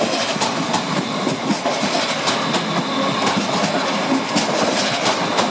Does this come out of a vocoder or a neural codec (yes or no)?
no